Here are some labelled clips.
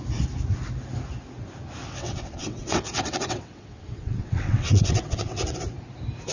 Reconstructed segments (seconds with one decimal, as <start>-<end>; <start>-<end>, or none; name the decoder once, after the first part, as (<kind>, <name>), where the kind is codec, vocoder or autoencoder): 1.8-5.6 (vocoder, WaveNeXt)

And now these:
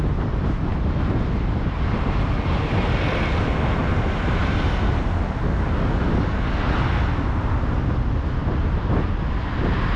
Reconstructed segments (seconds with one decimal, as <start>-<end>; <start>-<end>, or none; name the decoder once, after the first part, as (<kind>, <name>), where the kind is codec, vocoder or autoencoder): 5.4-6.6 (codec, DAC)

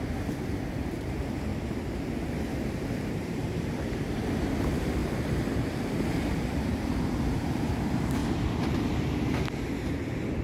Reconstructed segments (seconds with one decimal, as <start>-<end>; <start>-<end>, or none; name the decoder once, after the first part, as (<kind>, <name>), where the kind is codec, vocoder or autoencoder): 0.0-1.5 (vocoder, BigVGAN v2); 3.1-8.2